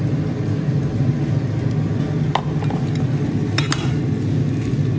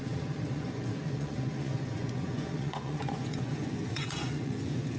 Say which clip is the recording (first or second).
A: first